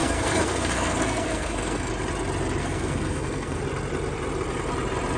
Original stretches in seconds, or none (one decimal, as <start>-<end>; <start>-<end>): 1.9-2.6; 3.6-5.2